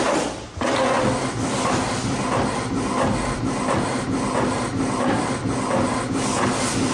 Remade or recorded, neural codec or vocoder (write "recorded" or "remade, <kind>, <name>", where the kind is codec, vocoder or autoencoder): recorded